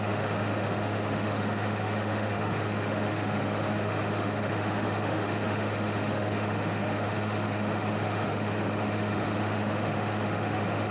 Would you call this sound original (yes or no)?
no